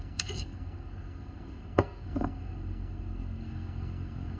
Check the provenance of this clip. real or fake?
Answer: fake